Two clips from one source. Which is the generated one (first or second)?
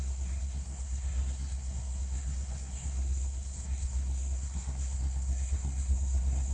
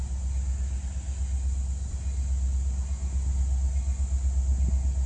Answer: first